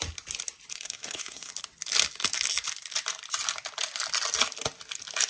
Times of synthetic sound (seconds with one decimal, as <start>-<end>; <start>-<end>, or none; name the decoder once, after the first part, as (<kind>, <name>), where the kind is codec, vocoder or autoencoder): 0.7-1.5 (codec, SNAC)